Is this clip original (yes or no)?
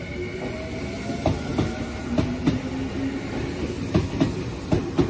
yes